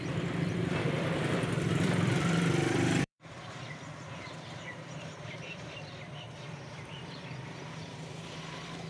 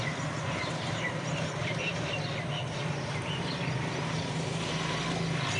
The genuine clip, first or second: second